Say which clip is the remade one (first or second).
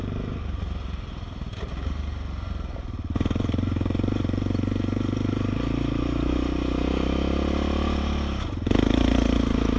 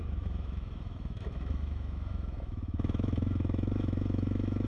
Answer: second